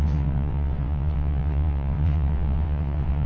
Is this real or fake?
fake